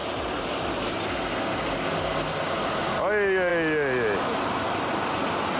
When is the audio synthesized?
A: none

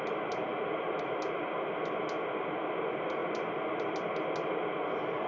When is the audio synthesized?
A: none

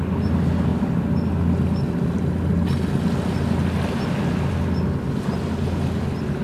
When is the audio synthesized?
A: none

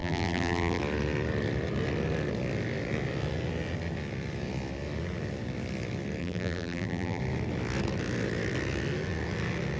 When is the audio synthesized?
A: 0.0-0.8; 6.2-7.2

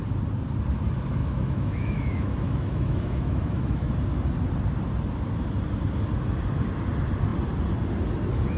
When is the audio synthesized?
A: 1.2-3.9

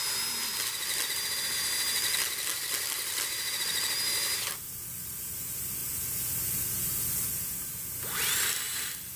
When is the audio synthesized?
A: none